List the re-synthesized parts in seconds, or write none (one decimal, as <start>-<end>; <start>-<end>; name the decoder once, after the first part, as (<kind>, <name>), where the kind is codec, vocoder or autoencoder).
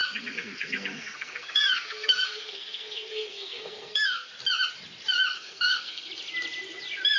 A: 0.0-4.3 (codec, SNAC); 5.3-6.1